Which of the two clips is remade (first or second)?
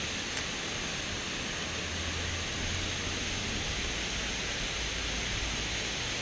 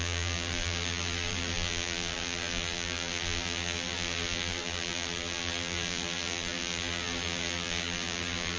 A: second